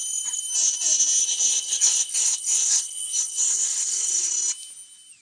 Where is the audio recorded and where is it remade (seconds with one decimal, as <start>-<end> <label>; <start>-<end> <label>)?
0.0-1.2 recorded; 1.2-4.3 remade; 4.3-5.2 recorded